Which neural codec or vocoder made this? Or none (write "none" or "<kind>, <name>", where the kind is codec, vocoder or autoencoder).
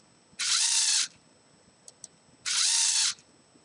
none